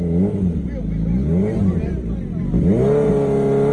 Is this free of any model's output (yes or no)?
yes